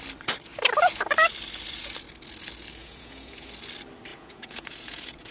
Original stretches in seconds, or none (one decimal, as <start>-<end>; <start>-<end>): 0.0-2.8; 3.5-4.1